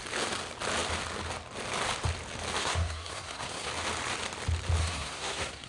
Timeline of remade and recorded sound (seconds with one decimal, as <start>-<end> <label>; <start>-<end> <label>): 0.0-2.6 recorded; 2.6-3.7 remade; 3.7-4.8 recorded; 4.8-5.7 remade